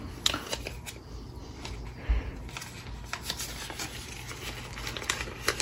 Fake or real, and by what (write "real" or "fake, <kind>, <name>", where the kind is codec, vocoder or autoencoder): real